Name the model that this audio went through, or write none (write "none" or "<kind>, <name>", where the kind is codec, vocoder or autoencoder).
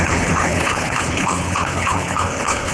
codec, HILCodec